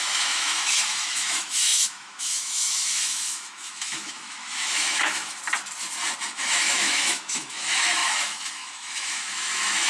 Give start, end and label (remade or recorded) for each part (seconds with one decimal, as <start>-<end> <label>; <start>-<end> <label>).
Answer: 0.0-5.4 remade; 5.4-6.3 recorded; 6.3-9.9 remade

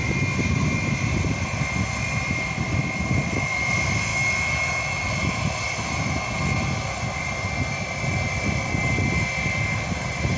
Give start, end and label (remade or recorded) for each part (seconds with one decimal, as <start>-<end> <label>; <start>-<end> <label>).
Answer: 0.0-4.1 recorded; 4.1-5.0 remade; 5.0-10.4 recorded

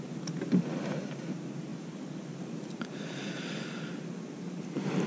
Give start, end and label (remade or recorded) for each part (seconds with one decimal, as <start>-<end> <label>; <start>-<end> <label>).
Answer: 0.0-5.1 recorded

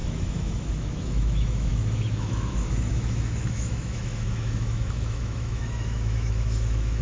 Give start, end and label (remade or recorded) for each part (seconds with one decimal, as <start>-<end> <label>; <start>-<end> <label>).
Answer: 0.0-7.0 remade

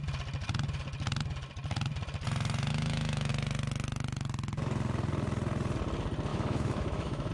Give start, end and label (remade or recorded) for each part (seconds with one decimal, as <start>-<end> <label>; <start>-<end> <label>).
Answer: 0.0-2.7 recorded; 2.7-3.3 remade; 3.3-6.3 recorded; 6.3-7.3 remade